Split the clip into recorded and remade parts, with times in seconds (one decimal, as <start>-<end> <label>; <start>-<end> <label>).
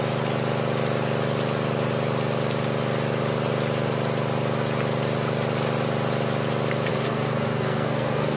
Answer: 0.0-6.9 recorded; 6.9-8.4 remade